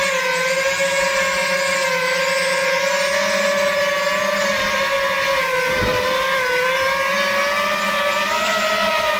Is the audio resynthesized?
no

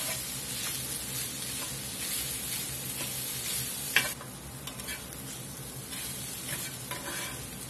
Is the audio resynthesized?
no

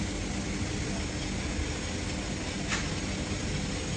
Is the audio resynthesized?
no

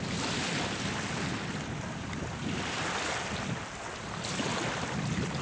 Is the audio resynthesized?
no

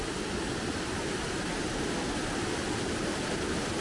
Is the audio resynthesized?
no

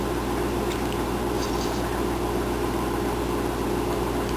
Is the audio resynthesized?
no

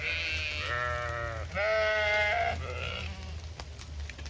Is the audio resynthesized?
no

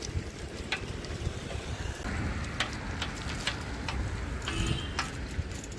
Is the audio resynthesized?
no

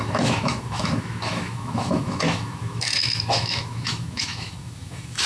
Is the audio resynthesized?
yes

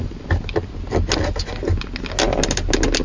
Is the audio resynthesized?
no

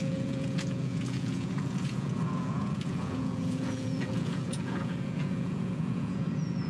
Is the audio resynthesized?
yes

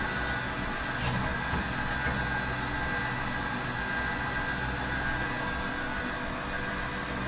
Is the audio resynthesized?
no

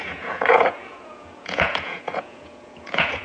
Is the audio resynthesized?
yes